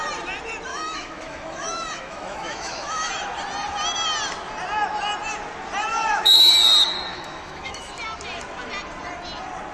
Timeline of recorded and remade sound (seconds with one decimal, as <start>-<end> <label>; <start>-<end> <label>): 0.0-0.7 recorded; 0.7-3.1 remade; 3.1-5.9 recorded; 5.9-6.5 remade; 6.5-7.1 recorded; 7.1-7.9 remade; 7.9-9.7 recorded